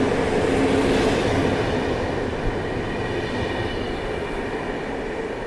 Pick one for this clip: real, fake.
real